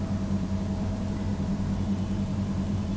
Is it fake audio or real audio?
fake